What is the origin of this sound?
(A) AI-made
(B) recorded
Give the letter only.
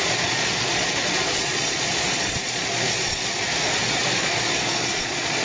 A